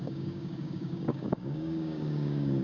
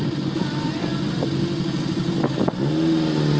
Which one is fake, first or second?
first